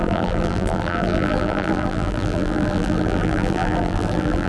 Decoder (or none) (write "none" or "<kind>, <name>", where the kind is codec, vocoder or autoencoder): vocoder, BigVGAN v2